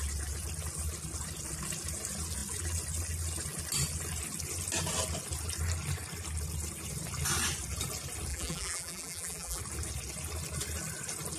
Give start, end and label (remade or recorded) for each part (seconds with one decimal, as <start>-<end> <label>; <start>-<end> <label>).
0.0-8.3 recorded; 8.3-9.6 remade; 9.6-11.4 recorded